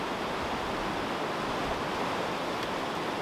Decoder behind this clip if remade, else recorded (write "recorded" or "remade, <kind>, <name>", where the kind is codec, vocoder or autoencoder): recorded